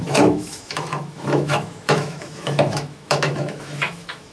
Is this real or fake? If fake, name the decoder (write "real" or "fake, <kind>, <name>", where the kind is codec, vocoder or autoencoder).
fake, autoencoder, DAC-VAE